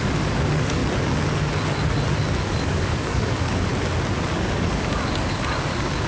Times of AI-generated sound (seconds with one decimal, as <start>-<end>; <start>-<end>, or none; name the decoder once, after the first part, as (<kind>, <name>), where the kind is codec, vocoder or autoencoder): 0.0-0.8 (codec, DAC); 2.4-3.7; 4.3-6.1